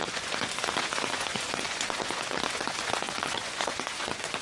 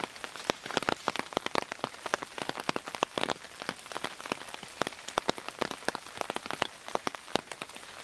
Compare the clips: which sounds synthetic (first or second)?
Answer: first